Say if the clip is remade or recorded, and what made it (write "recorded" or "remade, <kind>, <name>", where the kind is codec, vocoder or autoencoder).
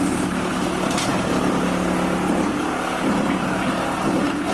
recorded